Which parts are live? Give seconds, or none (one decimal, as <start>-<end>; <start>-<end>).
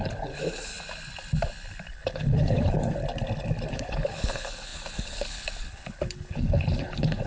0.7-1.9; 3.0-3.7